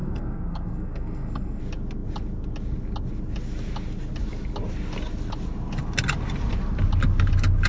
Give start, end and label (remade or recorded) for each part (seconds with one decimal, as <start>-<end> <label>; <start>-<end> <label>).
0.0-1.6 remade; 1.6-7.7 recorded